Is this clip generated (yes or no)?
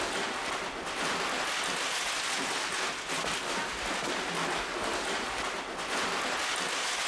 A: no